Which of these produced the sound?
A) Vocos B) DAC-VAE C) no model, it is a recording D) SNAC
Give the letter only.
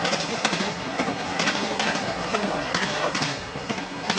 D